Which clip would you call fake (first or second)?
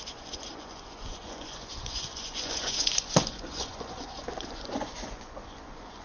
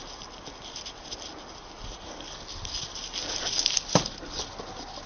first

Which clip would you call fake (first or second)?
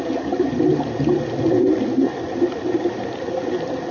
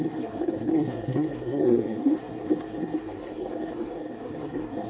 second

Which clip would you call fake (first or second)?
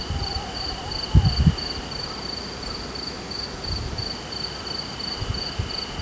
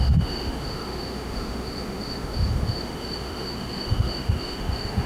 second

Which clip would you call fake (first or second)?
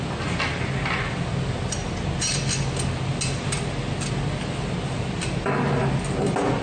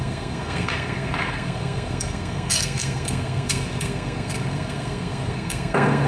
second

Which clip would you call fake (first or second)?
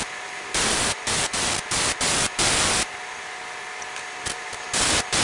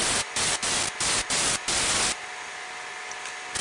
first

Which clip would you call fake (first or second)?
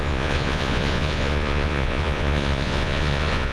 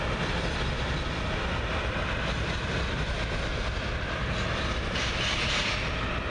first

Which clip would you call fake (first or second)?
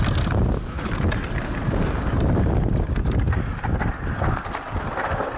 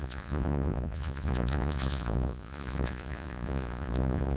second